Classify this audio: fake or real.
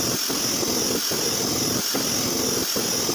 real